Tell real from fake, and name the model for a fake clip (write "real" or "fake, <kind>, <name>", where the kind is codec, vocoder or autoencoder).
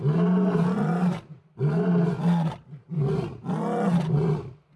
real